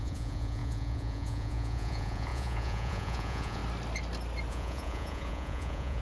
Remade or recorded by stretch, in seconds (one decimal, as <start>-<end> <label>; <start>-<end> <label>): 0.0-3.6 remade; 3.6-4.5 recorded; 4.5-6.0 remade